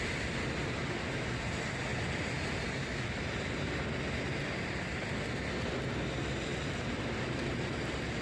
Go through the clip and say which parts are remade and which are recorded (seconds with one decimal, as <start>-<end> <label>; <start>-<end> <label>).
0.0-8.2 recorded